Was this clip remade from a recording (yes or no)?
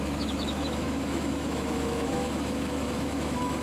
yes